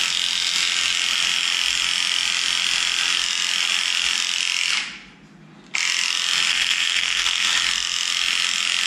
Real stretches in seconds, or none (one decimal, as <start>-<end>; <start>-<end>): 0.0-6.5; 7.5-8.9